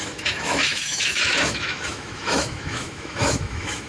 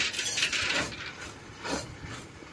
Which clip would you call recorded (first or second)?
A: second